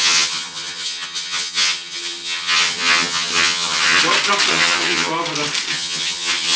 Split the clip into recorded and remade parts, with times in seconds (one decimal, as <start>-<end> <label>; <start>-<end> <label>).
0.0-4.0 remade; 4.0-4.5 recorded; 4.5-5.1 remade; 5.1-5.7 recorded; 5.7-6.6 remade